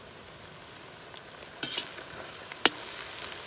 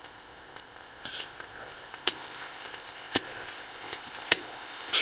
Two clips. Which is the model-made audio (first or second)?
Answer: second